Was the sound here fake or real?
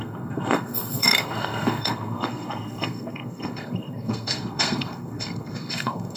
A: fake